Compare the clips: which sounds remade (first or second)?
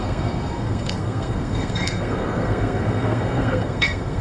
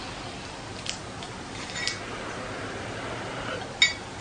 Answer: first